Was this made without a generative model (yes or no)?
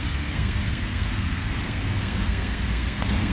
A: no